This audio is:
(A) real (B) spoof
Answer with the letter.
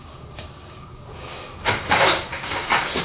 B